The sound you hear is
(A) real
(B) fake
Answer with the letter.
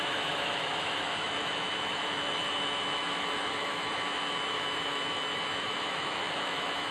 B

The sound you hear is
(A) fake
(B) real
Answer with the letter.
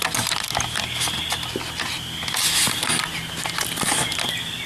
B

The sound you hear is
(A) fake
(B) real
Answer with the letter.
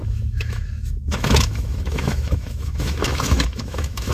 A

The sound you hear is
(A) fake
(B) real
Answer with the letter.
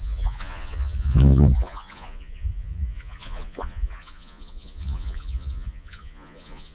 A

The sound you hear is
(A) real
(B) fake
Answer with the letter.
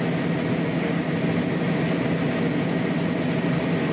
A